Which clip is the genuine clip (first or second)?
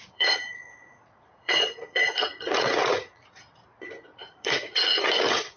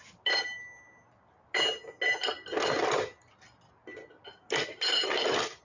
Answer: second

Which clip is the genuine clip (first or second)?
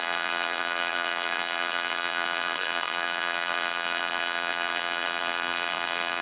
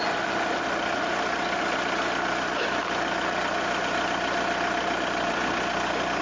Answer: second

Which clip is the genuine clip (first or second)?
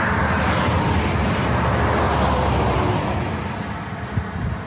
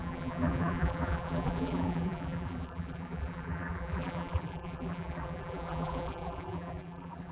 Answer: first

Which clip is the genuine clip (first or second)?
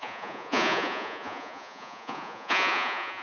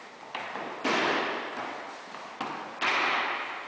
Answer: second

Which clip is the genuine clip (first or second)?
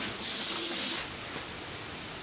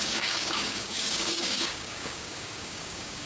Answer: first